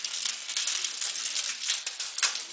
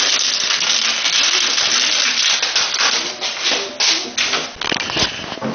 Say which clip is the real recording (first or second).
second